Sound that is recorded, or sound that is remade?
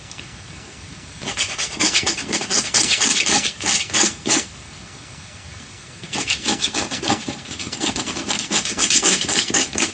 remade